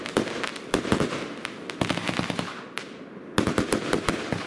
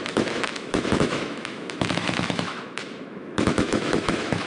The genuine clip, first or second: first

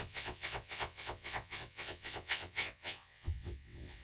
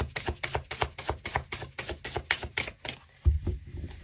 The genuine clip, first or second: second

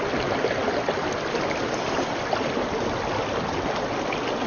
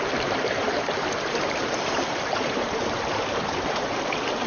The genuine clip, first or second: first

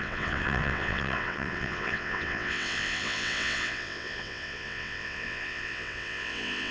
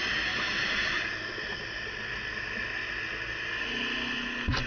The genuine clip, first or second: second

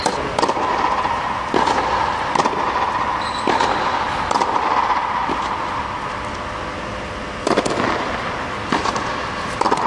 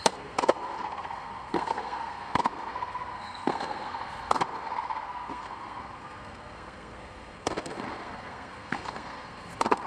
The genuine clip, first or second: first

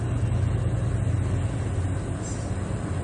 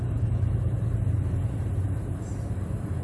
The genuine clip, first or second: first